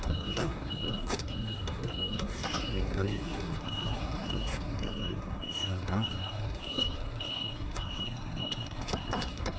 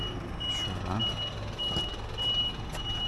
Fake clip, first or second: first